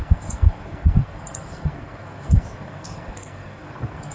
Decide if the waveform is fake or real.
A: fake